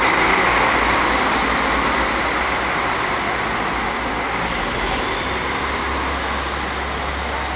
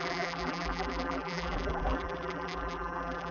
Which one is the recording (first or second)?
first